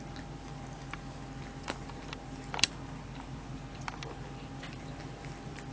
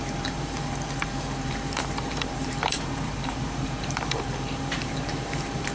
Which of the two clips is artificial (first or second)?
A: second